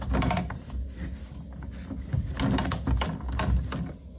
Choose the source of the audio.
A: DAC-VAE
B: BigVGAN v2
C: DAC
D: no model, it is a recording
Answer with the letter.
D